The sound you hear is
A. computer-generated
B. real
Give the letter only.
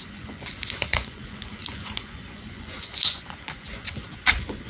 A